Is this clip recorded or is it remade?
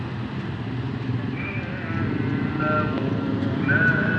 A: recorded